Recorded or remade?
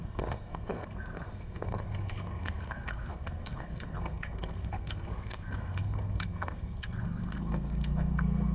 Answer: remade